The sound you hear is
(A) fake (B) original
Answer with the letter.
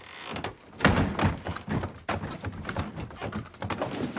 B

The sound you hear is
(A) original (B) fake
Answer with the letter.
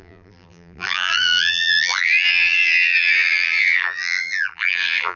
B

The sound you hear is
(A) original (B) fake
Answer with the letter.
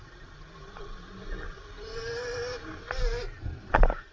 A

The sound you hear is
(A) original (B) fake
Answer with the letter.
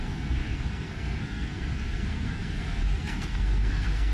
B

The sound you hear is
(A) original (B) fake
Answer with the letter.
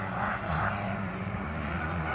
B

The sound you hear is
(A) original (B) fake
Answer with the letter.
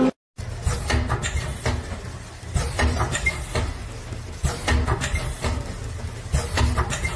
A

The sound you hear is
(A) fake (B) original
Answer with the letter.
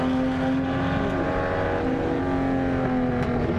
B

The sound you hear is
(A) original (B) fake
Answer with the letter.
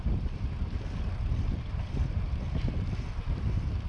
A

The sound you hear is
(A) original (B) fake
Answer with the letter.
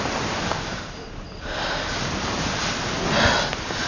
A